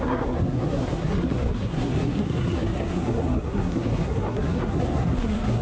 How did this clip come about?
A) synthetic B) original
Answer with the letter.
A